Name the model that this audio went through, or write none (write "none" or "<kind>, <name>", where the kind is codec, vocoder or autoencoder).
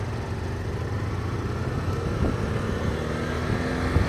none